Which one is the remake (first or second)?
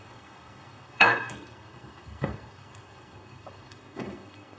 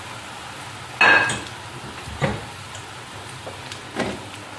first